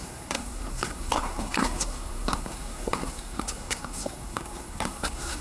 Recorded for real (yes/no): no